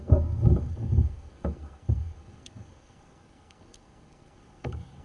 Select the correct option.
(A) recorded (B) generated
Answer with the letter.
B